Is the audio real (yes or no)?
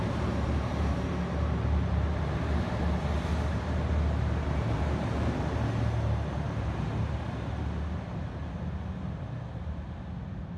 yes